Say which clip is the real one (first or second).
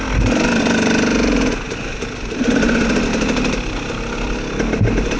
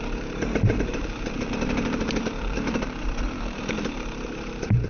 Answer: first